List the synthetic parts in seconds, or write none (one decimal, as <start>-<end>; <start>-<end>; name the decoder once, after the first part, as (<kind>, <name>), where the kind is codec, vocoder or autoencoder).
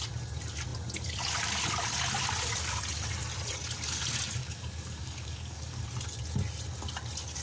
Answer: 4.4-5.8 (codec, DAC)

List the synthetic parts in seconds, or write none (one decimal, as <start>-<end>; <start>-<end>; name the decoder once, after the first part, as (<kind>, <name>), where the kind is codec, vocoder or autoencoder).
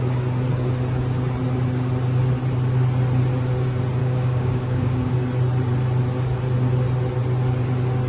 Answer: 4.0-5.1 (codec, DAC)